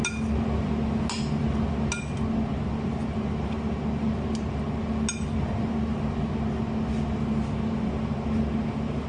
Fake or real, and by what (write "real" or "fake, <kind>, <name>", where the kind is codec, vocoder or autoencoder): real